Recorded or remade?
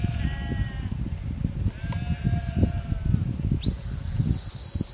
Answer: recorded